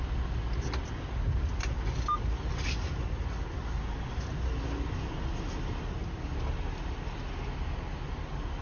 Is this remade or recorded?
recorded